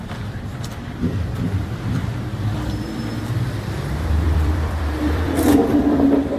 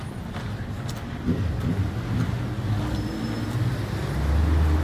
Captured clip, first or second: second